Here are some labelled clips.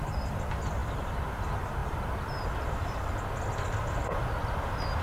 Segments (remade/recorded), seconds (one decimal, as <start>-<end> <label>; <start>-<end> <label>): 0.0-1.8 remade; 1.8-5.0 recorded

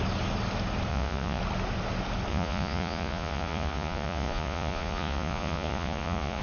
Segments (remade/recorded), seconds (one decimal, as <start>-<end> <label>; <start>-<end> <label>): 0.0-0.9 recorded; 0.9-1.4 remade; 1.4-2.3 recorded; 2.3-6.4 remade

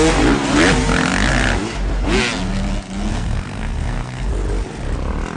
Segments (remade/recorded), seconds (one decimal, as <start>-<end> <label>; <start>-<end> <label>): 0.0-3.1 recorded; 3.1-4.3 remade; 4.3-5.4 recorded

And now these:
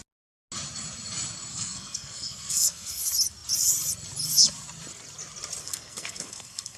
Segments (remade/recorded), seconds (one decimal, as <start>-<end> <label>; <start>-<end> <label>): 0.0-1.5 recorded; 1.5-3.0 remade; 3.0-5.6 recorded; 5.6-6.8 remade

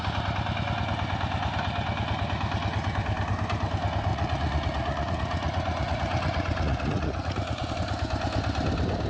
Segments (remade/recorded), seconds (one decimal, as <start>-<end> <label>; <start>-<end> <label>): 0.0-4.1 recorded; 4.1-7.7 remade; 7.7-9.1 recorded

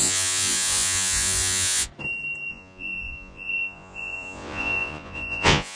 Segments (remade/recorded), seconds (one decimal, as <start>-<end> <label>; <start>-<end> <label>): 0.0-1.9 remade; 1.9-2.5 recorded; 2.5-5.8 remade